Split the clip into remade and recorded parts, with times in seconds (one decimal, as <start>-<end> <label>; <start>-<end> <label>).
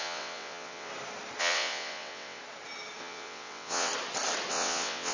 0.0-0.9 remade; 0.9-1.4 recorded; 1.4-2.4 remade; 2.4-3.0 recorded; 3.0-3.9 remade; 3.9-4.5 recorded; 4.5-5.1 remade